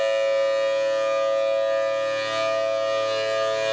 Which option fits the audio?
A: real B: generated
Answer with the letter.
A